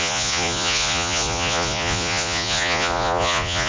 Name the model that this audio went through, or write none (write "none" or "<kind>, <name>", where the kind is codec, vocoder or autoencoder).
vocoder, Vocos